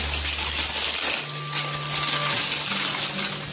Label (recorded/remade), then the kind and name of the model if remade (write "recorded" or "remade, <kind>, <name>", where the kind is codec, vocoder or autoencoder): recorded